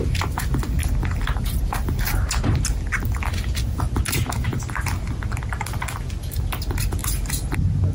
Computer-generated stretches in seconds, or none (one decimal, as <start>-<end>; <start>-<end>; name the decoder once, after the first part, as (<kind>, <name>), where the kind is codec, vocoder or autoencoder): 4.5-5.1 (vocoder, BigVGAN v2); 7.0-7.9